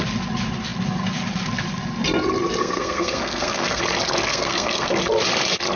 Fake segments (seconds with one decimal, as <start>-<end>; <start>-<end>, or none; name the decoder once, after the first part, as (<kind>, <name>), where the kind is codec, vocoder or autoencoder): 2.6-3.8 (codec, SNAC); 4.3-5.0